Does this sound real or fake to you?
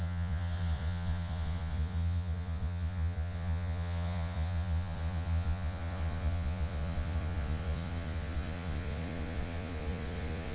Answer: fake